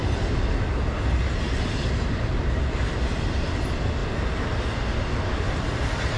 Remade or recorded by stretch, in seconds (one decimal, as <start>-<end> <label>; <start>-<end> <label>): 0.0-1.6 recorded; 1.6-4.0 remade; 4.0-5.4 recorded; 5.4-6.2 remade